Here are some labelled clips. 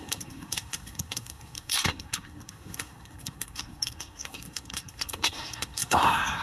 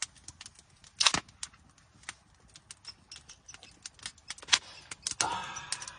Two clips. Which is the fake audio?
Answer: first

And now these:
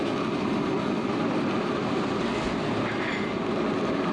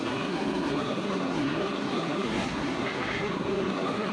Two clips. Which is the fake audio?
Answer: second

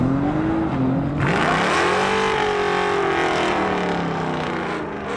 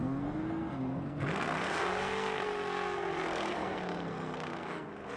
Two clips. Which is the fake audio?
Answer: second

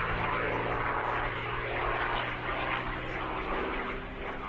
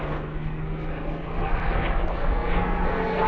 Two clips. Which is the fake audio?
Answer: second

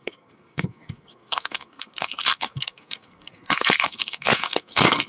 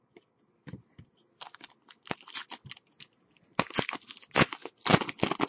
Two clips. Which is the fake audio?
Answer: first